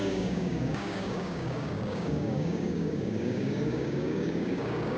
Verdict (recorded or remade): remade